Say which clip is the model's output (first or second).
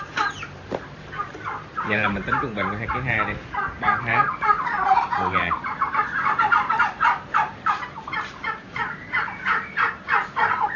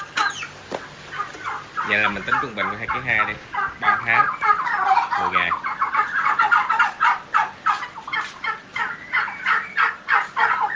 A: first